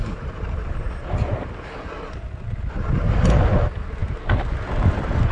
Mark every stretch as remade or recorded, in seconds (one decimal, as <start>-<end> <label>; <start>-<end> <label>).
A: 0.0-5.3 recorded